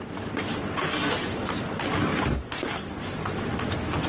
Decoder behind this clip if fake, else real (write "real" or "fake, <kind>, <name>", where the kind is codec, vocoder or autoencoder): real